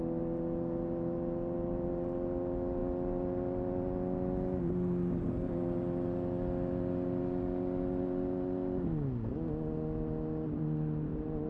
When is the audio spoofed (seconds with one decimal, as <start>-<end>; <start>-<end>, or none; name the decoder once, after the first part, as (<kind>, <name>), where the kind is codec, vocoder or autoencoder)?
none